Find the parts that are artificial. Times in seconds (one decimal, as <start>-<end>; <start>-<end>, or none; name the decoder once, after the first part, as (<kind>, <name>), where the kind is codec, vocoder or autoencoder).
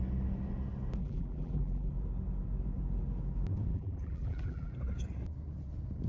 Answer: 1.0-1.9 (vocoder, BigVGAN v2); 3.7-4.7